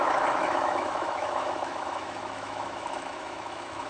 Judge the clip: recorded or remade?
remade